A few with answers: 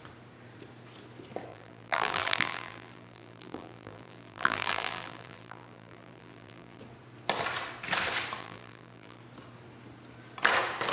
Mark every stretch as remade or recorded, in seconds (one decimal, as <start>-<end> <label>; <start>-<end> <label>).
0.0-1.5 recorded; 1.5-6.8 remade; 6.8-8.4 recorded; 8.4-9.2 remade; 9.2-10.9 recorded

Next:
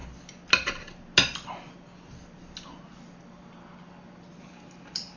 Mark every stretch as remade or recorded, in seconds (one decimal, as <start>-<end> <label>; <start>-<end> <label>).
0.0-5.2 recorded

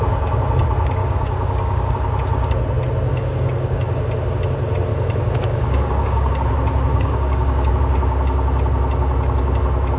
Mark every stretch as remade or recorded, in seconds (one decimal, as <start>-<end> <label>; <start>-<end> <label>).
0.0-1.0 recorded; 1.0-1.9 remade; 1.9-3.1 recorded; 3.1-4.0 remade; 4.0-4.9 recorded; 4.9-6.3 remade; 6.3-6.9 recorded; 6.9-7.7 remade; 7.7-10.0 recorded